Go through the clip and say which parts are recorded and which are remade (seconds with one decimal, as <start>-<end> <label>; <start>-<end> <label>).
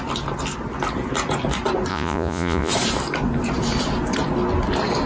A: 0.0-1.9 recorded; 1.9-2.7 remade; 2.7-5.1 recorded